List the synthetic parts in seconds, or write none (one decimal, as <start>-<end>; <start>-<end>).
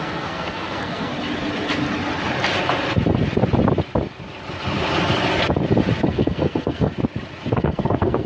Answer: 0.0-1.1; 6.1-6.9; 7.6-8.3